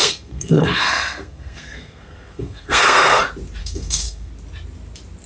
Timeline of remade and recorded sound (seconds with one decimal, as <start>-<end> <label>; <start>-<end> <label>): 0.0-3.2 remade; 3.2-3.6 recorded; 3.6-4.3 remade; 4.3-5.3 recorded